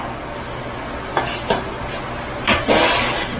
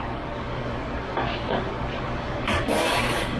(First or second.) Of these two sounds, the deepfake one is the second